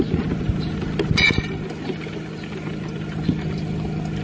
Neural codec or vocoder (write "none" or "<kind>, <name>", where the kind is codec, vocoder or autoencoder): none